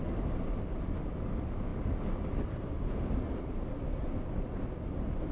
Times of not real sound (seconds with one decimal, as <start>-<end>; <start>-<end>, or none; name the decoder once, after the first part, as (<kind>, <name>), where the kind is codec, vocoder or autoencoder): none